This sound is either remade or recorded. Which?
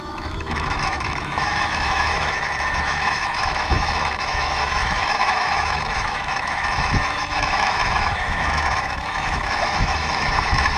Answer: remade